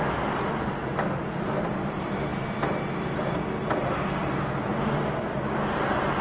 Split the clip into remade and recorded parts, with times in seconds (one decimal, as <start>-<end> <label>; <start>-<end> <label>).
0.0-6.2 recorded